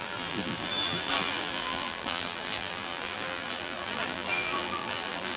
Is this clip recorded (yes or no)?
no